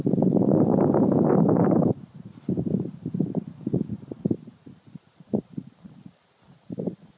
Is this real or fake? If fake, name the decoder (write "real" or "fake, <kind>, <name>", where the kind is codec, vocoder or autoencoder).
fake, vocoder, BigVGAN v2